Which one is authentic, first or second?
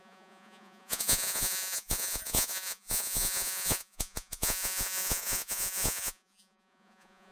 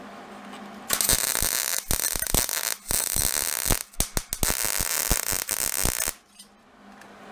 second